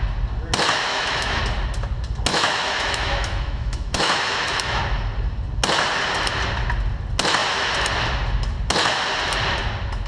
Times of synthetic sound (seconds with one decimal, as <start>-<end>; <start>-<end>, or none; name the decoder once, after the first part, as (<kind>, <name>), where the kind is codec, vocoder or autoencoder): 0.9-1.4 (autoencoder, DAC-VAE); 2.3-4.8